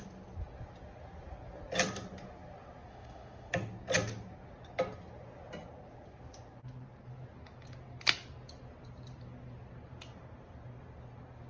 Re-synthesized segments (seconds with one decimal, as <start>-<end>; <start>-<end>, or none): 2.9-3.5